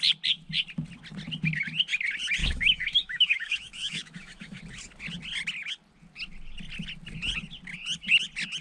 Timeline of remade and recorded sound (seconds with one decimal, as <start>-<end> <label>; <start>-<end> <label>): 0.0-2.4 recorded; 2.4-4.6 remade; 4.6-8.6 recorded